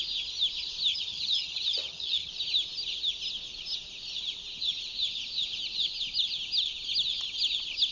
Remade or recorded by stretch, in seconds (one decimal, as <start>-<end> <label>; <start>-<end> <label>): 0.0-0.9 recorded; 0.9-2.3 remade; 2.3-7.9 recorded